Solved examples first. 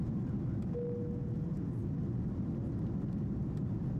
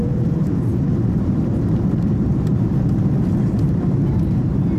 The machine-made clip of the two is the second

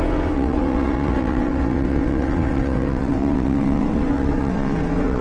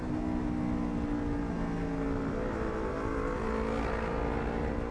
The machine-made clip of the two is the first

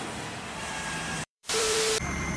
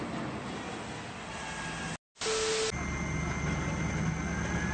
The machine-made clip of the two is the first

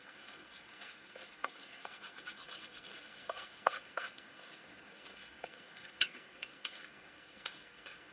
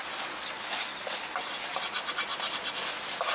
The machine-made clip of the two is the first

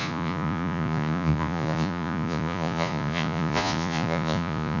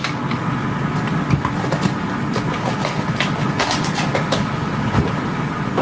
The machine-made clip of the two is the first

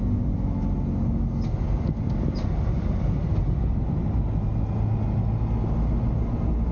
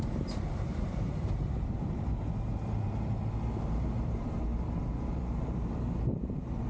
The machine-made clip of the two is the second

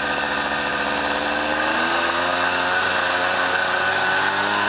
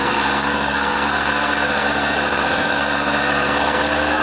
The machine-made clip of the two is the second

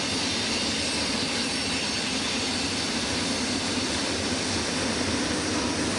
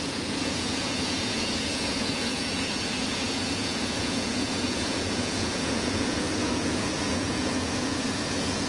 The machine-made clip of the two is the second